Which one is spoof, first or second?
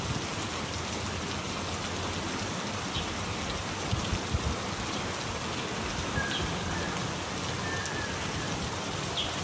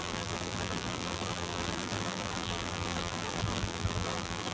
second